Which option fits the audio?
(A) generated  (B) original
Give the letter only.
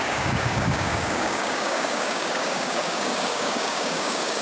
A